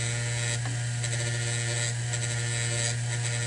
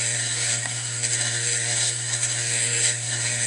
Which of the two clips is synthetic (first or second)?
second